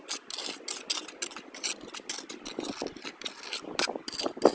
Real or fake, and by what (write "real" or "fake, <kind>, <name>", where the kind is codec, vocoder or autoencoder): real